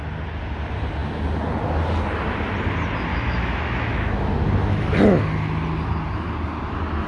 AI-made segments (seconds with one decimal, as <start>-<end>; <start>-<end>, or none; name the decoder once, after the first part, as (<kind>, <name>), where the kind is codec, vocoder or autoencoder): 3.1-4.3 (autoencoder, DAC-VAE)